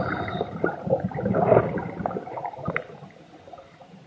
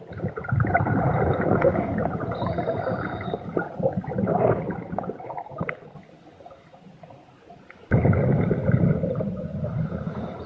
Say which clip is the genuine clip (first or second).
second